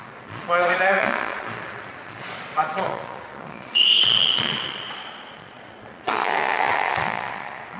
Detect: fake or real fake